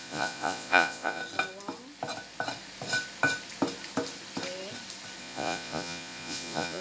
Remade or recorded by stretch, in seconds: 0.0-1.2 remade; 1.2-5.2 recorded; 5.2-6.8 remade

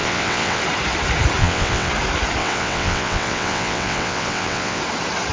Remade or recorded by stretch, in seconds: 0.0-0.6 remade; 0.6-1.4 recorded; 1.4-1.9 remade; 1.9-2.4 recorded; 2.4-4.8 remade; 4.8-5.3 recorded

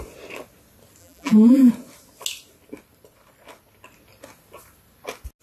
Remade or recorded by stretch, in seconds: 0.0-1.0 recorded; 1.0-1.7 remade; 1.7-5.4 recorded